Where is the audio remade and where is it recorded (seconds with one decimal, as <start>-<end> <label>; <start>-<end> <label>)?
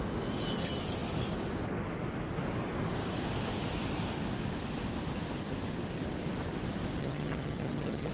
0.0-7.0 recorded; 7.0-8.1 remade